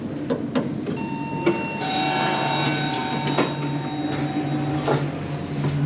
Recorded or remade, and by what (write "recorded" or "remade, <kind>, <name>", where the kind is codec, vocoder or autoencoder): recorded